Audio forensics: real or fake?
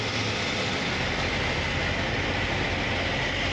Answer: real